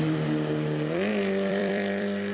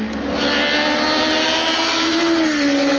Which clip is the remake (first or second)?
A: first